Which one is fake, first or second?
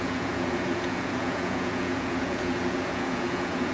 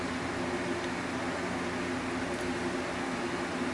first